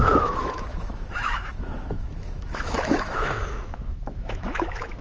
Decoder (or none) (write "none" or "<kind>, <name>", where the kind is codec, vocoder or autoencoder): autoencoder, DAC-VAE